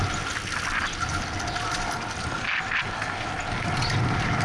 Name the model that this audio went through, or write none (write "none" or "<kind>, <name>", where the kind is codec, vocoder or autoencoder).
none